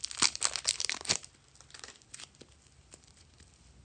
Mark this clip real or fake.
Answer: real